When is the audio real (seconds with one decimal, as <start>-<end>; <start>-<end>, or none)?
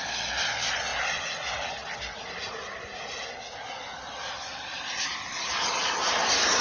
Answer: 0.9-4.9